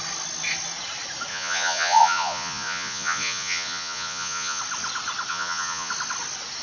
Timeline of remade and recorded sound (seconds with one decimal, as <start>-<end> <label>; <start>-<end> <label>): 0.0-1.3 recorded; 1.3-4.6 remade; 4.6-5.3 recorded; 5.3-5.9 remade; 5.9-6.6 recorded